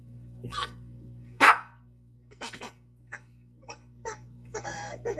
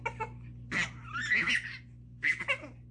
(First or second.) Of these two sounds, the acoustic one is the second